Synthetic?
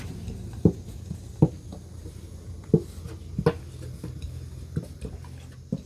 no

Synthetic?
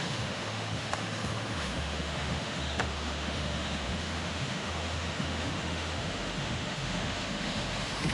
yes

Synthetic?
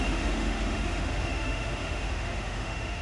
yes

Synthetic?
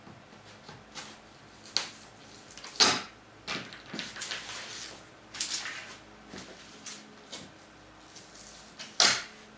no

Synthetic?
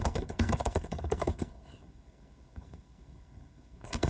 yes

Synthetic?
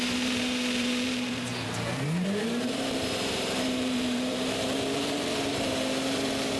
yes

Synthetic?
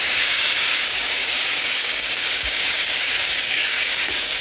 yes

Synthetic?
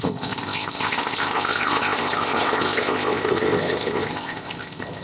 yes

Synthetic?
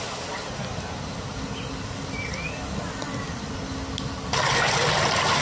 no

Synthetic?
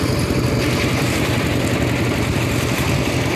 no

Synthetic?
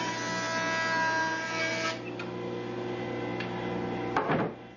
no